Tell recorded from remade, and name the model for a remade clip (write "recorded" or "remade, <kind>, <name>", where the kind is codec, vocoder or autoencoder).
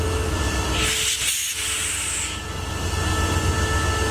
recorded